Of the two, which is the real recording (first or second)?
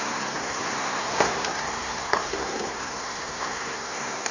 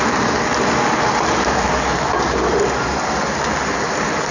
second